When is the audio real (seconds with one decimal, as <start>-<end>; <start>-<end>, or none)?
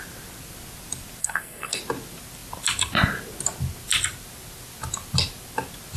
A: 0.0-1.2; 1.8-6.0